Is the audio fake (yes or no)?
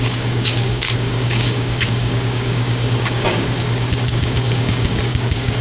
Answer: yes